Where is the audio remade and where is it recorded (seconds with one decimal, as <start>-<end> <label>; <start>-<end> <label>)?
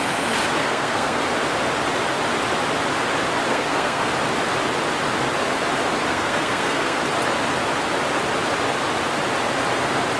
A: 0.0-0.6 recorded; 0.6-1.2 remade; 1.2-3.5 recorded; 3.5-4.1 remade; 4.1-6.1 recorded; 6.1-7.0 remade; 7.0-10.2 recorded